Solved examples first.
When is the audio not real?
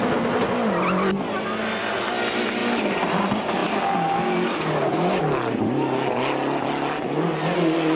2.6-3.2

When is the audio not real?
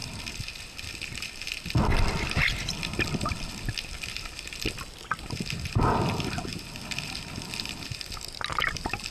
0.0-0.6; 1.9-4.8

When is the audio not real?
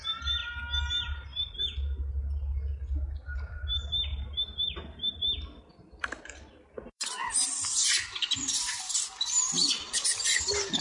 4.1-8.8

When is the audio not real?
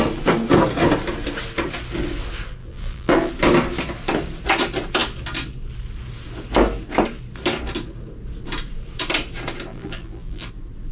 2.6-3.3; 9.7-10.5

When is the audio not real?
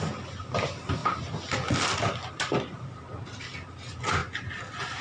4.2-5.0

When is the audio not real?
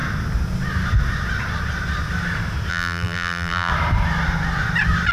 2.7-3.7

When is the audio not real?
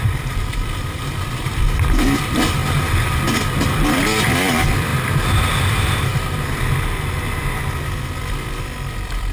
0.0-2.6; 3.7-4.9; 5.5-6.1; 8.9-9.3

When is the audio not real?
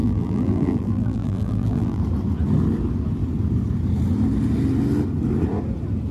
0.0-2.0